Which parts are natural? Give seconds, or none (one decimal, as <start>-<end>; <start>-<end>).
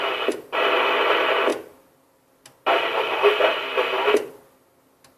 0.0-5.2